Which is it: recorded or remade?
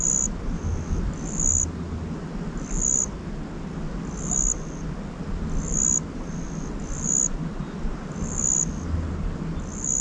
recorded